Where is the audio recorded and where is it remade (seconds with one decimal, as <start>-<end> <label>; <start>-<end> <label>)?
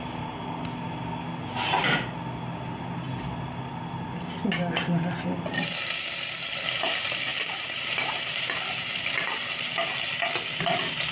0.0-7.3 recorded; 7.3-8.6 remade; 8.6-11.1 recorded